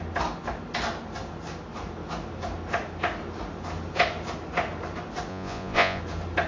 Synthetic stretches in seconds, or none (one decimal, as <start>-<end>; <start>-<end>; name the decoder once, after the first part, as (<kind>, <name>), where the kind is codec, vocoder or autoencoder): 5.3-6.0 (vocoder, Vocos)